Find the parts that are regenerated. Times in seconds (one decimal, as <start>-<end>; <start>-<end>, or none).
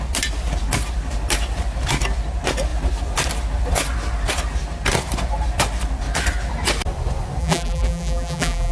7.4-8.7